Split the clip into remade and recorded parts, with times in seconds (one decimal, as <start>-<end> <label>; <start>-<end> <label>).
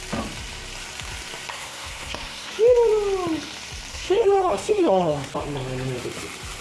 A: 0.0-1.5 recorded; 1.5-2.5 remade; 2.5-3.9 recorded; 3.9-5.3 remade; 5.3-6.6 recorded